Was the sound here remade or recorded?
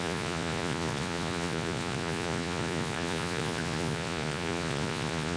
remade